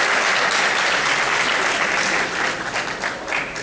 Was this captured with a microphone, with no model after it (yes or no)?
yes